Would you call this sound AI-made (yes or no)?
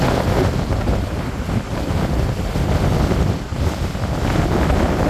no